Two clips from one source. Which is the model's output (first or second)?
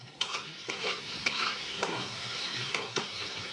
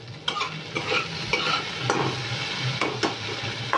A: first